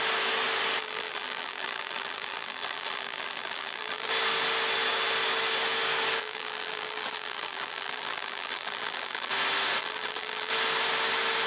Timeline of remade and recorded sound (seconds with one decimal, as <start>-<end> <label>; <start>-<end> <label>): 0.0-0.8 recorded; 0.8-4.1 remade; 4.1-6.2 recorded; 6.2-9.3 remade; 9.3-9.8 recorded; 9.8-10.5 remade; 10.5-11.5 recorded